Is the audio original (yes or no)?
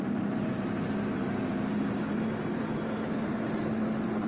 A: no